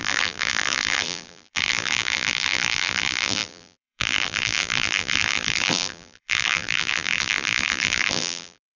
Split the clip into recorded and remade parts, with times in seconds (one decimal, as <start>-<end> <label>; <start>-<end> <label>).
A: 0.0-8.8 remade